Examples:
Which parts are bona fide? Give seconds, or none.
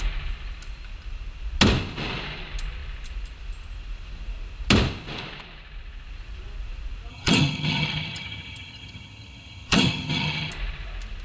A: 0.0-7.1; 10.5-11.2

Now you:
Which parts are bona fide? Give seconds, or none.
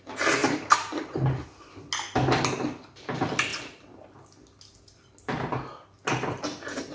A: 0.0-0.4; 1.7-6.9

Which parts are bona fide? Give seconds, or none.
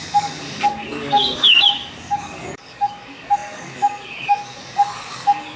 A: none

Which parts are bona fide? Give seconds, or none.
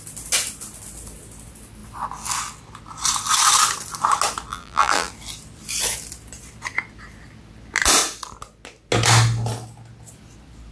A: 0.0-4.5; 5.1-10.7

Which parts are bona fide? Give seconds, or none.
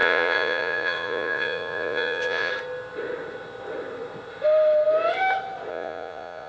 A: 2.5-5.7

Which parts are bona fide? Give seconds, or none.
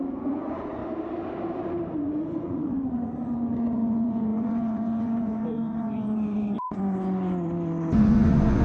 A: 0.8-2.1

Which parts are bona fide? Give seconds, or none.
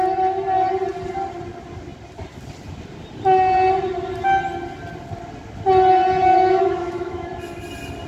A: 0.0-6.2; 7.3-8.1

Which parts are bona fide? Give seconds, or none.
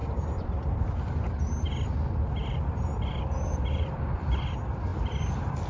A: 2.4-3.1